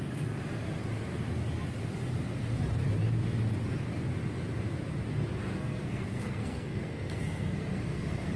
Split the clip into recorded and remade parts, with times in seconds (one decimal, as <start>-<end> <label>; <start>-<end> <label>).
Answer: 0.0-5.4 recorded; 5.4-8.4 remade